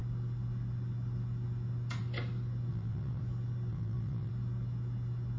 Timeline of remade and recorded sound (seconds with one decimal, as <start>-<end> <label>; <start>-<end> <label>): 0.0-2.7 recorded; 2.7-3.2 remade; 3.2-3.7 recorded; 3.7-4.3 remade; 4.3-5.4 recorded